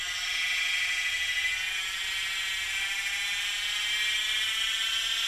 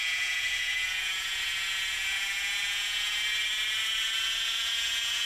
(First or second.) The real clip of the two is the first